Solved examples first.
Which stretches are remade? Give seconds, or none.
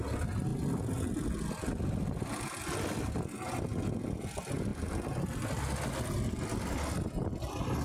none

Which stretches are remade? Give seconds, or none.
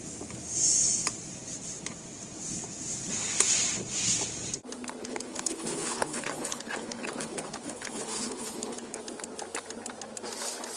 5.0-9.0 (codec, HILCodec)